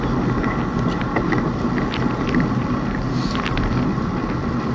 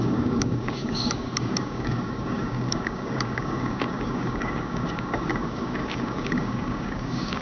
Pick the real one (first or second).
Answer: first